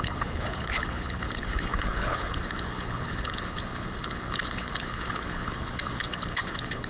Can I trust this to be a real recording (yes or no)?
no